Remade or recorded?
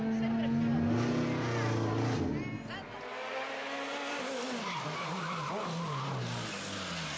recorded